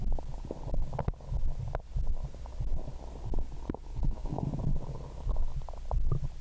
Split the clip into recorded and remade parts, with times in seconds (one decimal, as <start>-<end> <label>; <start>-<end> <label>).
0.0-3.9 recorded; 3.9-4.5 remade; 4.5-6.4 recorded